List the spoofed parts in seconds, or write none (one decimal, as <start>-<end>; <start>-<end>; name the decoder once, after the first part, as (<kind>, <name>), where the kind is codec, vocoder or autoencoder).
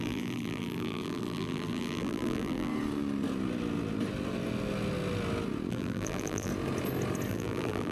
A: 0.0-2.7 (vocoder, BigVGAN v2); 5.7-6.5; 7.3-7.9